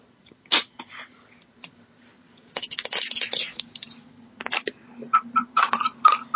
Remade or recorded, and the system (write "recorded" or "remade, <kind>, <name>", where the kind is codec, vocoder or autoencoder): recorded